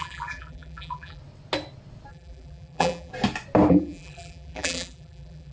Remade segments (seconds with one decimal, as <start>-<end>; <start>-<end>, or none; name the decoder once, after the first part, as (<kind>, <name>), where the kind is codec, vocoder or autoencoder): 0.0-1.2 (vocoder, BigVGAN v2); 2.1-3.1; 3.7-5.5